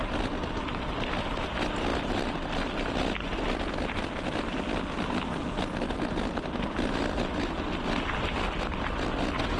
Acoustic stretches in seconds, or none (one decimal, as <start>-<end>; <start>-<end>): 0.0-1.9; 4.5-9.6